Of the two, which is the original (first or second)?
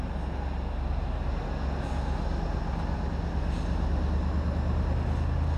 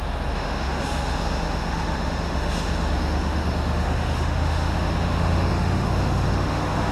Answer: first